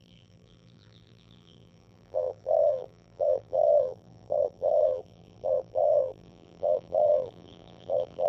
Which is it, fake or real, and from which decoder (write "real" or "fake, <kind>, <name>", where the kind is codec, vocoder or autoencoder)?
fake, vocoder, BigVGAN v2